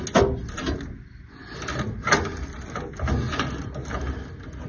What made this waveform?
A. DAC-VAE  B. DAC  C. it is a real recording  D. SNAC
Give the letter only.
C